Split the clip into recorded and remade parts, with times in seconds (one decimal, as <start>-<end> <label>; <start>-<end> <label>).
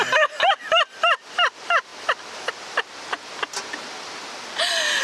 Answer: 0.0-5.0 recorded